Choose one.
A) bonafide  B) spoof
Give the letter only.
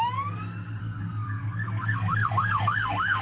B